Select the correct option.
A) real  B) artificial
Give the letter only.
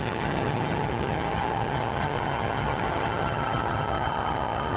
B